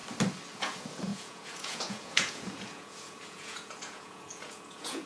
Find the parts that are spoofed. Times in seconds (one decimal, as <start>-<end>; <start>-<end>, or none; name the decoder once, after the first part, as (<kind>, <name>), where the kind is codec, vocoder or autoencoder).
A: 0.5-5.1 (vocoder, Vocos)